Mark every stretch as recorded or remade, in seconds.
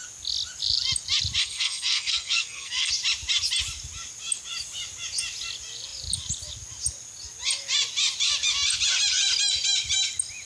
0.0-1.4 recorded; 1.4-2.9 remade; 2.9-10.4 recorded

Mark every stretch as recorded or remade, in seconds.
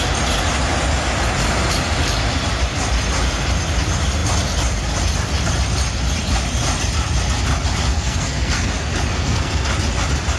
0.0-7.9 recorded; 7.9-8.7 remade; 8.7-9.1 recorded; 9.1-9.7 remade; 9.7-10.4 recorded